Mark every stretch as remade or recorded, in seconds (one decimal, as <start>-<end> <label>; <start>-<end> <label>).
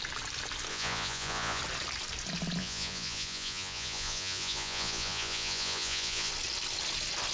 0.0-0.7 recorded; 0.7-1.6 remade; 1.6-2.6 recorded; 2.6-6.3 remade; 6.3-7.3 recorded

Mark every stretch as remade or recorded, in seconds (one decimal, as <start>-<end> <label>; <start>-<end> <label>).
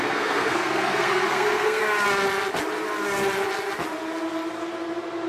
0.0-1.8 remade; 1.8-5.3 recorded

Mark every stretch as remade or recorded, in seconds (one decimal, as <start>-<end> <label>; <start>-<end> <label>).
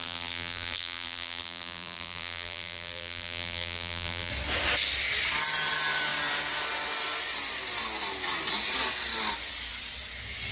0.0-4.3 remade; 4.3-10.5 recorded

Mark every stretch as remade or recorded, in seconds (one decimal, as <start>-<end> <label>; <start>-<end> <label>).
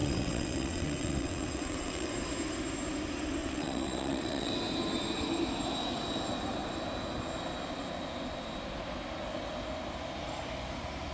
0.0-2.1 remade; 2.1-3.4 recorded; 3.4-4.5 remade; 4.5-11.1 recorded